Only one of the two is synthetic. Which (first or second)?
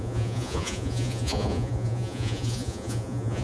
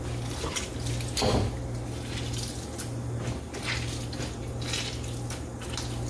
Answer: first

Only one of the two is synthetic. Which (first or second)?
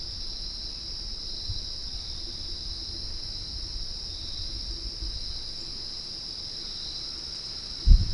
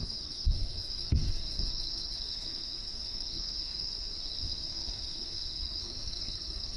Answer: second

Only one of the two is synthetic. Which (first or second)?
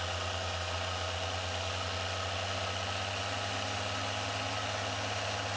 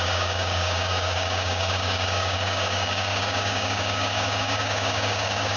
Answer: second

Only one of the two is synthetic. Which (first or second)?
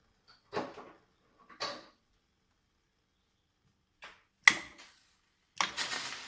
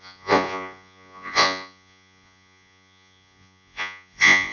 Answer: second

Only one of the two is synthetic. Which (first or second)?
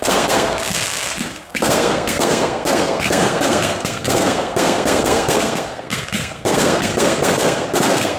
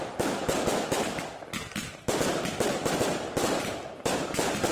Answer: first